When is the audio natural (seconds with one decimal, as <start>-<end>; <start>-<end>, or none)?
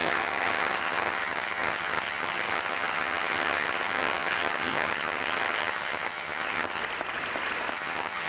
6.8-7.7